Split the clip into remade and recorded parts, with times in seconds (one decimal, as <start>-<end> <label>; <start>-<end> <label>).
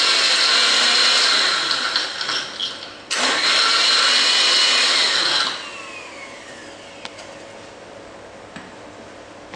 0.0-9.6 recorded